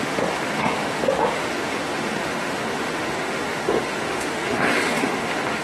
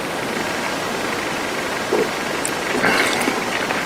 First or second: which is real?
second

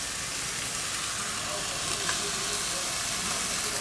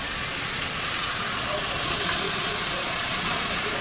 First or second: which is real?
first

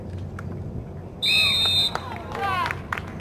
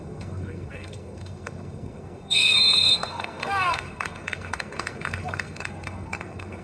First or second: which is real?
first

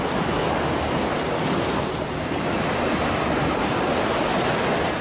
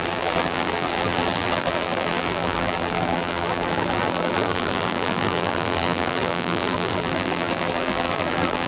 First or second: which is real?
first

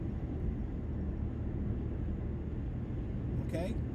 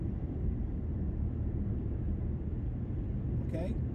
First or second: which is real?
first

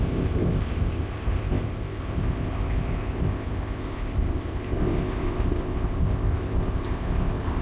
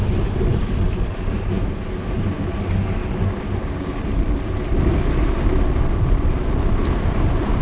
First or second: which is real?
second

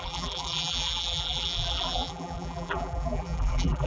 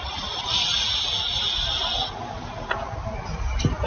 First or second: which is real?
second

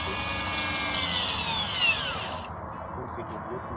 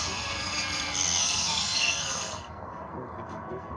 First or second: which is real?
first